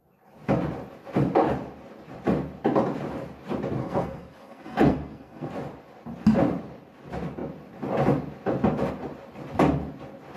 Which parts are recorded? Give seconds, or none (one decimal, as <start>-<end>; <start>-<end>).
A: 0.0-3.8; 5.5-10.4